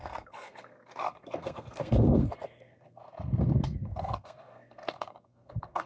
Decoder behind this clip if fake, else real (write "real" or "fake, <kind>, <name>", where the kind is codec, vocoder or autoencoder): fake, codec, SNAC